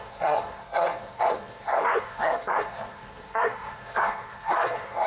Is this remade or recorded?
remade